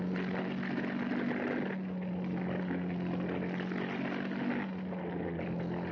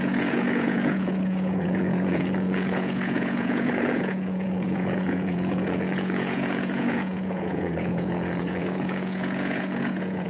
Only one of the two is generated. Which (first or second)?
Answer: second